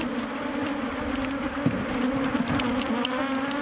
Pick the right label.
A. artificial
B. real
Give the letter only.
B